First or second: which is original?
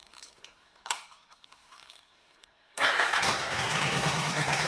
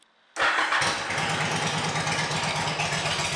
second